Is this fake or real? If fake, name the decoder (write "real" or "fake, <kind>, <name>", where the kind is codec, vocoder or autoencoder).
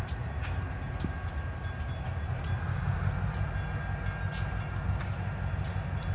real